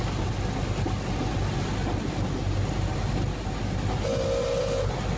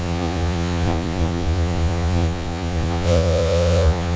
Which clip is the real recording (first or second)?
first